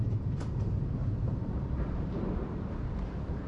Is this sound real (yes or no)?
no